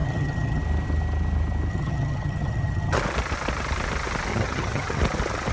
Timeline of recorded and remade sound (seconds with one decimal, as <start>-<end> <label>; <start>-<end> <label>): 0.0-0.6 remade; 0.6-1.7 recorded; 1.7-3.0 remade; 3.0-4.3 recorded; 4.3-5.0 remade; 5.0-5.5 recorded